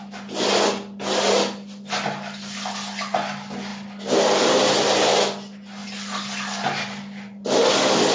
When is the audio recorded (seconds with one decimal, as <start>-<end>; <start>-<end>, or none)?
0.0-8.1